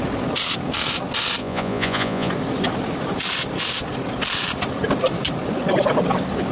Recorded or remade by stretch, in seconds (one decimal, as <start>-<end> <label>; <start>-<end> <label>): 0.0-1.4 recorded; 1.4-2.3 remade; 2.3-6.5 recorded